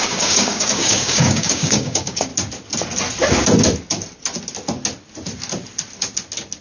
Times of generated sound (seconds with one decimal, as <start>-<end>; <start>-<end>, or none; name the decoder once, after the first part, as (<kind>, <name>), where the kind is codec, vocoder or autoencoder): 0.0-2.3 (codec, DAC)